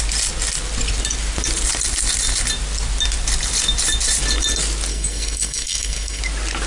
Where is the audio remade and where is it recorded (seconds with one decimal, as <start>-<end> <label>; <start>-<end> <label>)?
0.0-4.9 recorded; 4.9-6.2 remade; 6.2-6.7 recorded